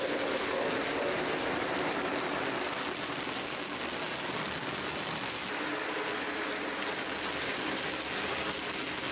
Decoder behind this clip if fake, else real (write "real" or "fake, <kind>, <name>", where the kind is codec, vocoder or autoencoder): real